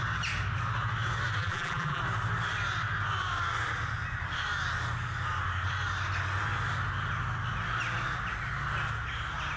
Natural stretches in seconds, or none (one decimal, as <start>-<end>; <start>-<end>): 0.0-1.4; 2.0-9.6